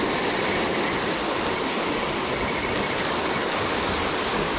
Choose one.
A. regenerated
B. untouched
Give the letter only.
B